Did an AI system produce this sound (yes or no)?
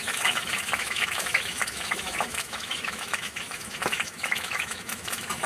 yes